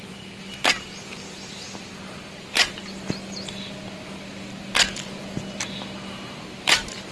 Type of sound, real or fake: real